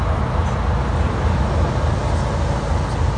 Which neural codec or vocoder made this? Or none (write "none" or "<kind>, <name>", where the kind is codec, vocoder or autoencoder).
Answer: none